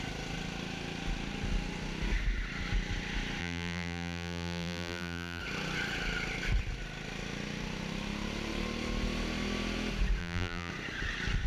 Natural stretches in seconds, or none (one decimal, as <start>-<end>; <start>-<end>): 0.0-3.4; 5.4-10.2; 10.7-11.5